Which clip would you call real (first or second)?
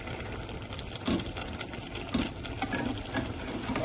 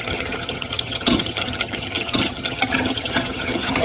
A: first